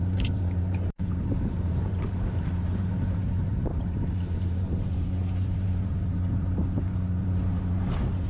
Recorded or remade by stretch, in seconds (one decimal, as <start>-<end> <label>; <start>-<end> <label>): 0.0-6.6 remade; 6.6-7.2 recorded; 7.2-8.3 remade